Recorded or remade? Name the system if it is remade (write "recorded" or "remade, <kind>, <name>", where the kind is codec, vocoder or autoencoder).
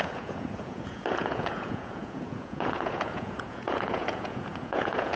remade, vocoder, Vocos